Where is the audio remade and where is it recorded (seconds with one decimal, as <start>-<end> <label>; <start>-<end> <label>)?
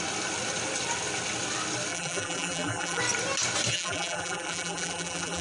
0.0-1.9 recorded; 1.9-3.0 remade; 3.0-3.7 recorded; 3.7-5.4 remade